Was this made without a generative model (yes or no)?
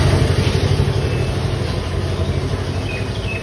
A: yes